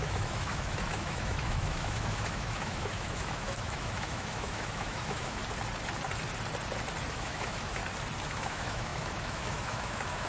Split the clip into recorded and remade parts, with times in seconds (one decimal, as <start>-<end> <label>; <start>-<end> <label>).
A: 0.0-5.4 remade; 5.4-7.1 recorded; 7.1-7.8 remade; 7.8-8.3 recorded; 8.3-10.3 remade